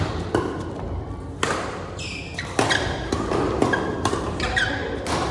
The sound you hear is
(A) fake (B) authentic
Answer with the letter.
B